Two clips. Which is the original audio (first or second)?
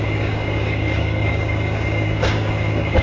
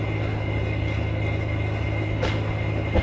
second